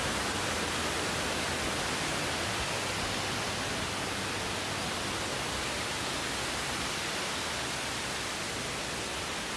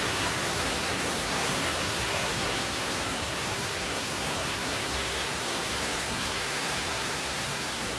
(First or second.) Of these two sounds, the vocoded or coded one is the second